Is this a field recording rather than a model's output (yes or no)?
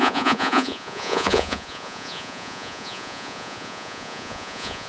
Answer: no